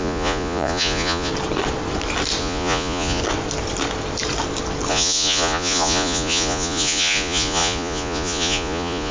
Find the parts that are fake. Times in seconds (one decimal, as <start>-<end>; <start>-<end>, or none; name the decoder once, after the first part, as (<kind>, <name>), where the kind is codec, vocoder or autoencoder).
0.0-1.3 (vocoder, Vocos); 2.4-3.2; 4.9-9.1